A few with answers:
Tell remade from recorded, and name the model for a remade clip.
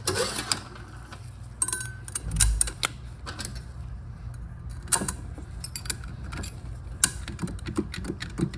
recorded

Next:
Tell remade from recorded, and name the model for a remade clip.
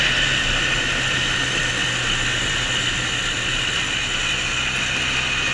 recorded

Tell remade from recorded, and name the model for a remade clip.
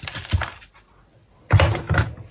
recorded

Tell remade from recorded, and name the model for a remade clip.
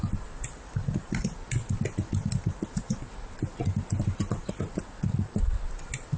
recorded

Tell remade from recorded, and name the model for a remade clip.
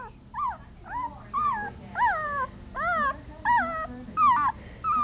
recorded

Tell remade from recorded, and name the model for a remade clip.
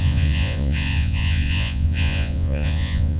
remade, vocoder, Vocos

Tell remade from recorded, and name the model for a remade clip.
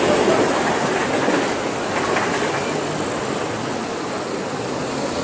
recorded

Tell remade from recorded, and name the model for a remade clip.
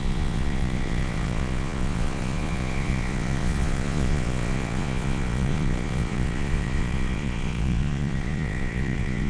remade, vocoder, Vocos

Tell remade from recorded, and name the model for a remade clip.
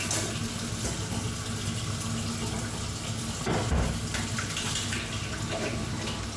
recorded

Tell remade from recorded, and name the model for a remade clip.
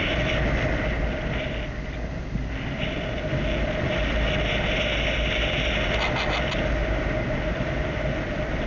recorded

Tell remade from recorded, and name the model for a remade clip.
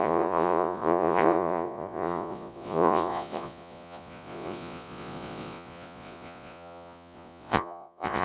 remade, vocoder, Vocos